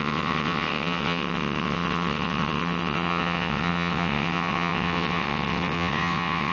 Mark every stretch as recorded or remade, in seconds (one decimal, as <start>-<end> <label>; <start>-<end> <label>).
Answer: 0.0-6.5 remade